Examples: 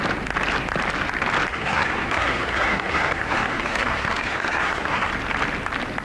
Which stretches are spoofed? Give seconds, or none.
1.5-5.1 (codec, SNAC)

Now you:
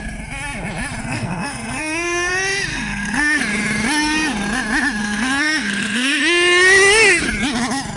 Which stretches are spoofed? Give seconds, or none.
1.0-2.3 (codec, SNAC); 2.7-3.4; 5.0-6.2

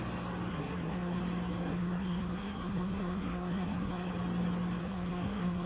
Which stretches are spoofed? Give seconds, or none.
0.5-1.2 (codec, SNAC); 1.6-4.1; 4.8-5.7

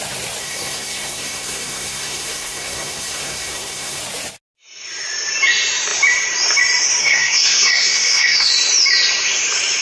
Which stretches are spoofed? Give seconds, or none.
0.4-4.0 (codec, SNAC); 7.0-8.5

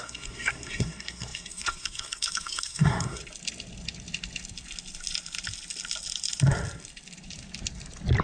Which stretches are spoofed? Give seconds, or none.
0.0-3.2 (codec, SNAC)

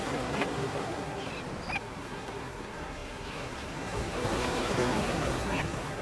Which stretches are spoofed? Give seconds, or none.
0.0-1.3 (codec, SNAC); 1.8-6.0

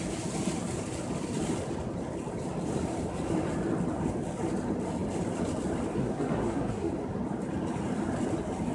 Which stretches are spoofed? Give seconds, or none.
6.0-6.9 (codec, SNAC)

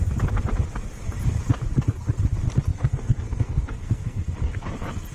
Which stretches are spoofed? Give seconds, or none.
2.7-4.2 (codec, SNAC)